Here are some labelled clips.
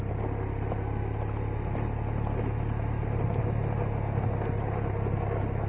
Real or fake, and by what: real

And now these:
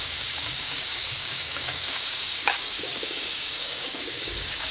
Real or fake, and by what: fake, codec, DAC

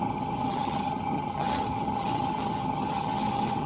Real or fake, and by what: fake, vocoder, HiFi-GAN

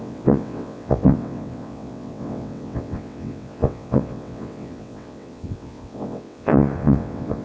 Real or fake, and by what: fake, vocoder, WaveNeXt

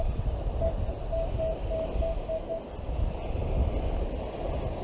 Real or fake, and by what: real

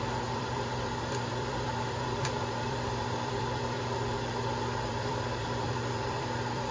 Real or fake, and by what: fake, vocoder, BigVGAN v2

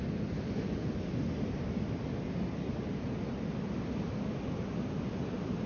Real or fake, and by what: real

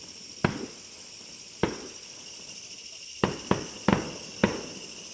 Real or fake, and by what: real